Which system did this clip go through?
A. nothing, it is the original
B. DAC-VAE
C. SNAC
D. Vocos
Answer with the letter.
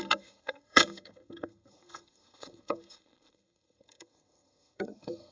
C